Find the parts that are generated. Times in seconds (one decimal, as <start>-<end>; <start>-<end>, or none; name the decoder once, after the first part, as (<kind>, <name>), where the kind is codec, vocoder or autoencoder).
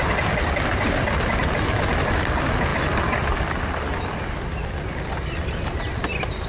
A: none